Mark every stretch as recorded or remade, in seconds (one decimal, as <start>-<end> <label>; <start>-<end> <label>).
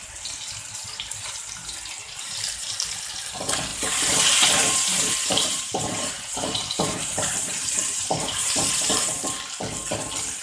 0.0-2.0 recorded; 2.0-2.7 remade; 2.7-3.7 recorded; 3.7-8.9 remade; 8.9-10.4 recorded